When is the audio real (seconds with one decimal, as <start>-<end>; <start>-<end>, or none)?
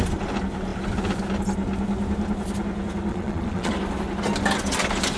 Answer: 0.0-3.1; 3.7-5.2